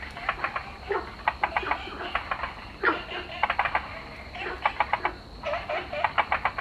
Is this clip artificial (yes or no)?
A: no